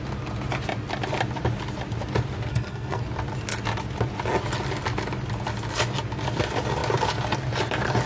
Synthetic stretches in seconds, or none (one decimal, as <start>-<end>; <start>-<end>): 2.5-3.0